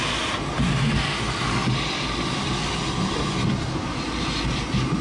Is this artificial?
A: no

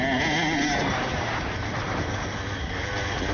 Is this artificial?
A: no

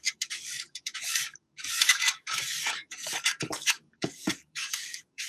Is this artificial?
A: yes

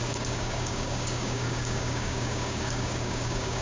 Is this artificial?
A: yes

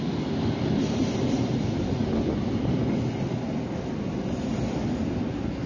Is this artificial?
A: no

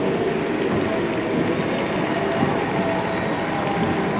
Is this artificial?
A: no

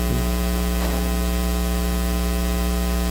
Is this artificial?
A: no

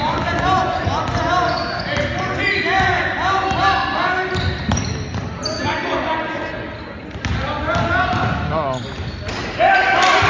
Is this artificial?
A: no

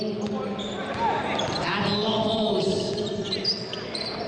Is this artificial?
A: no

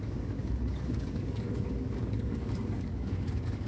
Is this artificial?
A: yes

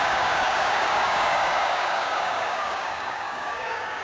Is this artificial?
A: yes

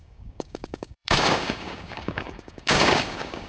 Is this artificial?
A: yes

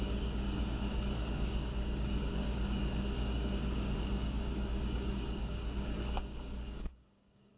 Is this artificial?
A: yes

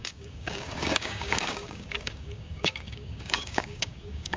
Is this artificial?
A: yes